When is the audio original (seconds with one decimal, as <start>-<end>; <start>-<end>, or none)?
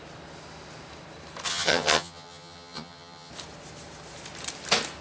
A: 0.0-1.5; 3.3-5.0